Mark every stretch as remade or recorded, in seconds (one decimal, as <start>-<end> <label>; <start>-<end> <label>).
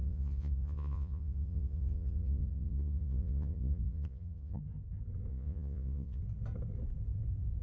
0.0-4.6 remade; 4.6-5.3 recorded; 5.3-6.2 remade; 6.2-7.6 recorded